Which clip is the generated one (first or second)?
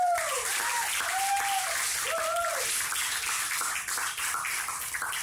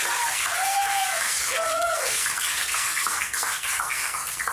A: second